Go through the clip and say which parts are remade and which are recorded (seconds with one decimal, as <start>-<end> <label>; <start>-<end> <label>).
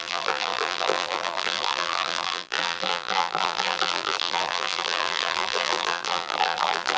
0.0-7.0 remade